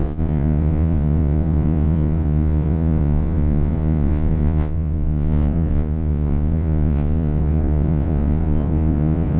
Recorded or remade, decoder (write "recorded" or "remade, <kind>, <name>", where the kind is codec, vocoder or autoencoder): remade, vocoder, Vocos